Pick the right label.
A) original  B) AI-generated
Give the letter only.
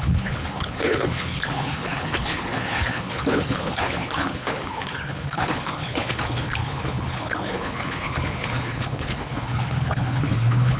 B